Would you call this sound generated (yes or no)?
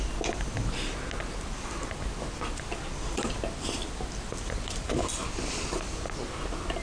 no